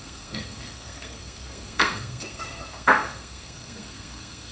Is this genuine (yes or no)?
no